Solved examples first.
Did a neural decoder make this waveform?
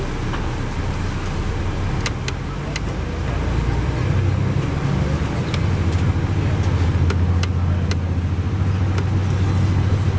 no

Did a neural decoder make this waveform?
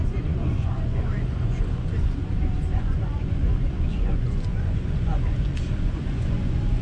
yes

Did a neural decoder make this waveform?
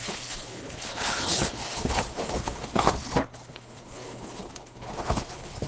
yes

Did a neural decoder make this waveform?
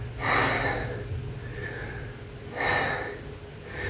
no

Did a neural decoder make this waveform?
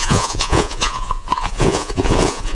yes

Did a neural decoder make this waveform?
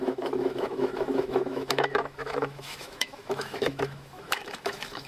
yes